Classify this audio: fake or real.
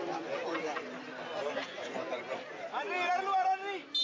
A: real